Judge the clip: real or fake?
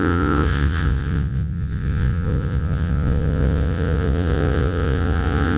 fake